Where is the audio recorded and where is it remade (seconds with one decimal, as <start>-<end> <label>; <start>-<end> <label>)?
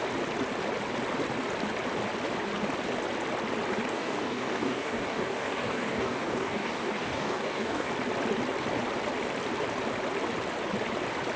0.0-3.9 recorded; 3.9-7.9 remade; 7.9-11.4 recorded